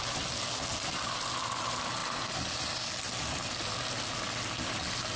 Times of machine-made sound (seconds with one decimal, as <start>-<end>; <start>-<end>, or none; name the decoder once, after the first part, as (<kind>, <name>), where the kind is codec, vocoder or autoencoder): none